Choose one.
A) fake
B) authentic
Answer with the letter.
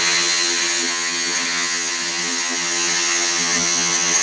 A